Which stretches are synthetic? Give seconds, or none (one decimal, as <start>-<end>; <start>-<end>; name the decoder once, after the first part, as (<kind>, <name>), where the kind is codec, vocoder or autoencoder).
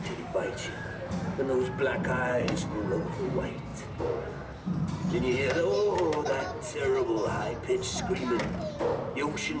2.3-2.8 (codec, SNAC)